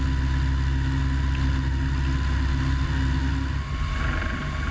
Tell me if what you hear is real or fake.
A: real